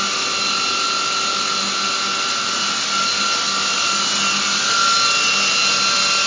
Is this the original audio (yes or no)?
yes